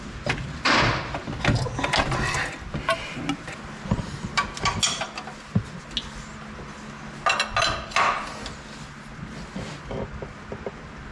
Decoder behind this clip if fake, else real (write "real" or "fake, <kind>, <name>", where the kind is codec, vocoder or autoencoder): real